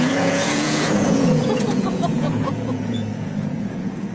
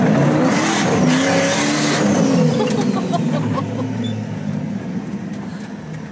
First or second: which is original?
second